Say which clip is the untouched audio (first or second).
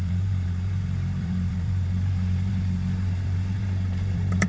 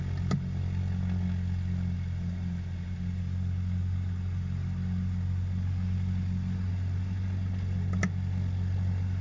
second